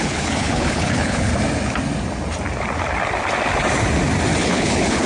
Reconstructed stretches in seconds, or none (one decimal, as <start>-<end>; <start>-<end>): 0.0-1.3; 4.4-5.1